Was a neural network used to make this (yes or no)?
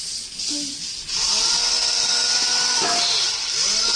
no